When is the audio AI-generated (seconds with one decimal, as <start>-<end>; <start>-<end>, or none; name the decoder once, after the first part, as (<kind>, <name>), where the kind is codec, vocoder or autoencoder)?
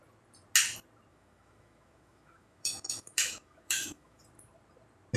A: 1.1-4.2 (autoencoder, DAC-VAE)